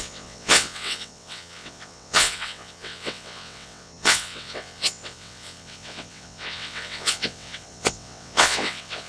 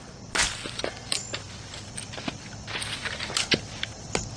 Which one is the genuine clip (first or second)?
second